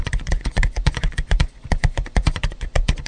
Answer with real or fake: fake